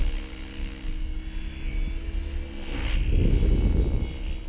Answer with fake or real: real